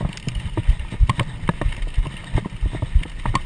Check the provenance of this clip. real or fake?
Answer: real